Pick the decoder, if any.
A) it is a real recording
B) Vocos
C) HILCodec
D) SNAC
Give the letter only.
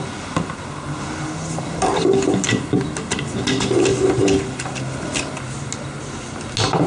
A